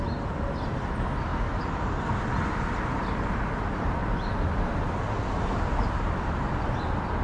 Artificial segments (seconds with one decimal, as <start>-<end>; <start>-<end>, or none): none